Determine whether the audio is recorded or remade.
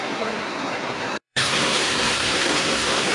remade